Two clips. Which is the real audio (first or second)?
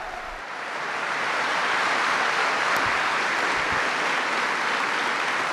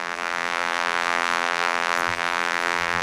first